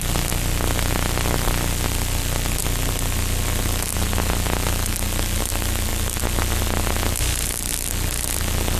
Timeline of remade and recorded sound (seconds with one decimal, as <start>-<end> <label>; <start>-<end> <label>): 0.0-8.8 recorded